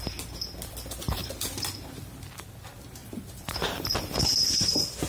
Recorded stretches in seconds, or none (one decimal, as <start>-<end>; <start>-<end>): 0.0-1.2; 2.3-3.0; 4.0-5.1